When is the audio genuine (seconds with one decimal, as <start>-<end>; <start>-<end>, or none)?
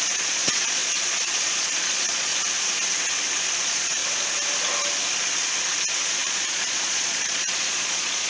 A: 2.3-3.6; 4.0-6.1